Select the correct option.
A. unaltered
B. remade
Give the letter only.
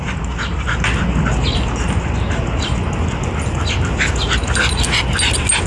A